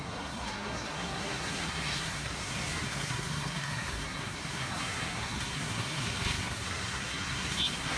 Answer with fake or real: fake